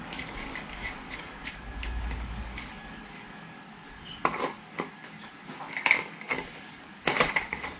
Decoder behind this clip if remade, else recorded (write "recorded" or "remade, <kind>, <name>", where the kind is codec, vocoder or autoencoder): remade, codec, DAC